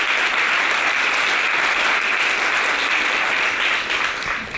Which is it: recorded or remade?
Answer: recorded